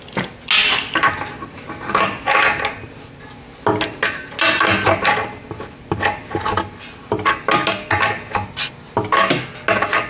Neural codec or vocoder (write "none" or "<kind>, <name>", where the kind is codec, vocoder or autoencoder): none